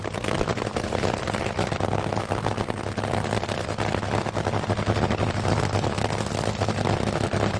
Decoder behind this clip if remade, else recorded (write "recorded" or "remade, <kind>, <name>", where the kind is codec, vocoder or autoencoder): recorded